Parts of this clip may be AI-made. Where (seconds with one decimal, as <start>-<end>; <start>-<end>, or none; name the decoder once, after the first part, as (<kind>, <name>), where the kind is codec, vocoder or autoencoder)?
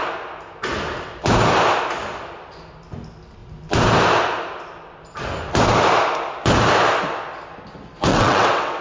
8.1-8.8 (vocoder, WaveNeXt)